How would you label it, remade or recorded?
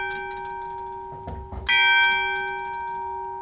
recorded